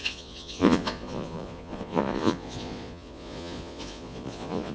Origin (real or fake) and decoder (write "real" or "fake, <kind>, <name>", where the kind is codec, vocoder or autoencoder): fake, vocoder, Vocos